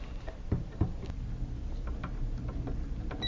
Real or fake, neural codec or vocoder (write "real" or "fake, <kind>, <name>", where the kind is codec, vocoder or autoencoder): real